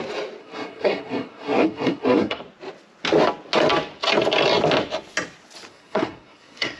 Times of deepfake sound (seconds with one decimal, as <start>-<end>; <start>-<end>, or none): 0.4-2.4; 5.7-6.8

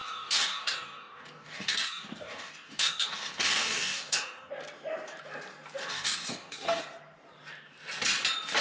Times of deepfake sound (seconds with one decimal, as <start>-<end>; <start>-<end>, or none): 0.0-4.5; 5.8-6.8

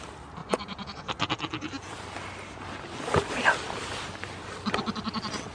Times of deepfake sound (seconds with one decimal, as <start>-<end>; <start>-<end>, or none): 0.4-1.3

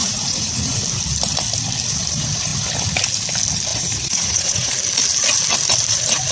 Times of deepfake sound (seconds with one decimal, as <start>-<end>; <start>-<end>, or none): 0.0-0.8; 3.7-4.7

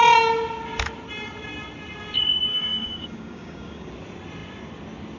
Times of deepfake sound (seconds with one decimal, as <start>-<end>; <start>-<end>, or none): 2.5-3.9